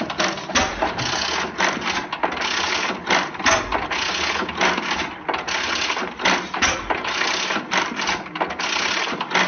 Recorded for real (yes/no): yes